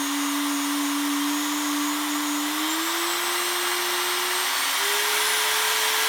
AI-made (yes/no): no